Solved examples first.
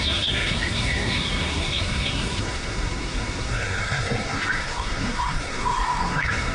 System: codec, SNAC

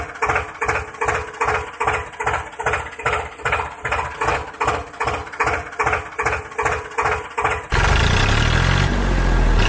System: none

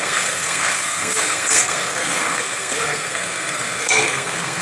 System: codec, SNAC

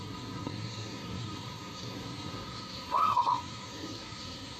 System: codec, SNAC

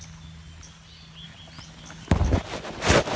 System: none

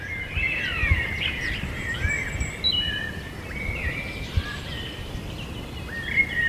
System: none